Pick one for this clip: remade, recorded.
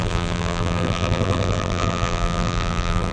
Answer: remade